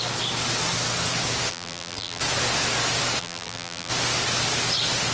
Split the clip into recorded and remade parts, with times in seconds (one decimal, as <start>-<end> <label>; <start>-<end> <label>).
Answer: 0.0-1.5 recorded; 1.5-2.2 remade; 2.2-3.2 recorded; 3.2-3.9 remade; 3.9-5.1 recorded

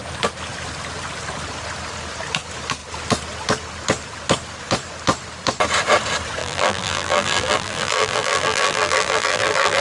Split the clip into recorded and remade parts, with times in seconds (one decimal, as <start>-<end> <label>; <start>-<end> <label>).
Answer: 0.0-6.4 recorded; 6.4-9.8 remade

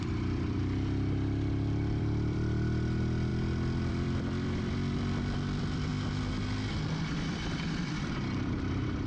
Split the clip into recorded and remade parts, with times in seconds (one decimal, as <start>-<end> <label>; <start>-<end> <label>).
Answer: 0.0-0.6 remade; 0.6-2.0 recorded; 2.0-3.3 remade; 3.3-3.9 recorded; 3.9-5.9 remade; 5.9-6.7 recorded; 6.7-9.1 remade

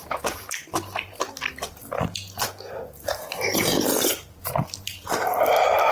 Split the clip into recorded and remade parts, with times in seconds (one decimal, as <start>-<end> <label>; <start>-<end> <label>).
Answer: 0.0-0.4 remade; 0.4-3.1 recorded; 3.1-4.6 remade; 4.6-5.2 recorded; 5.2-5.9 remade

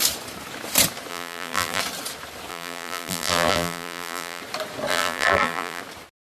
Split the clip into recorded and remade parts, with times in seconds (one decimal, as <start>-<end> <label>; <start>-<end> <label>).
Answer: 0.0-1.1 recorded; 1.1-1.8 remade; 1.8-2.5 recorded; 2.5-4.4 remade; 4.4-4.9 recorded; 4.9-5.8 remade; 5.8-6.2 recorded

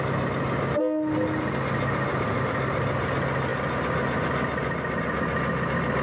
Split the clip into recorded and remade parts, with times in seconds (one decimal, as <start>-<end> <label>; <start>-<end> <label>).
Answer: 0.0-6.0 recorded

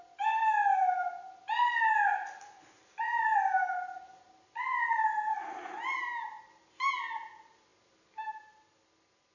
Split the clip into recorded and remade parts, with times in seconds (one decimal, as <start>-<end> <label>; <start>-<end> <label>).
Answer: 0.0-9.3 recorded